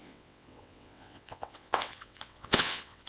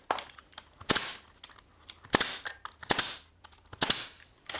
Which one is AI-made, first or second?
first